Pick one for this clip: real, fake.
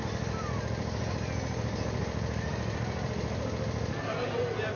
real